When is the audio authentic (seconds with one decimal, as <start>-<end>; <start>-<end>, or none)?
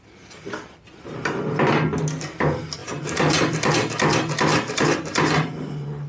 0.0-2.8; 3.7-4.5